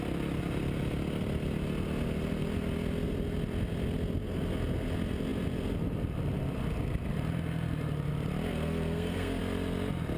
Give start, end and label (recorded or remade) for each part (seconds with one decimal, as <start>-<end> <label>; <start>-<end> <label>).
0.0-8.5 recorded; 8.5-9.4 remade; 9.4-10.2 recorded